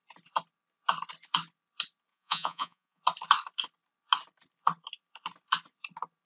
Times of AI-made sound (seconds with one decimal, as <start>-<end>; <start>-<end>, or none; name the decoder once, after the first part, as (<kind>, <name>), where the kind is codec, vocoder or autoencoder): 2.1-3.0 (vocoder, Vocos)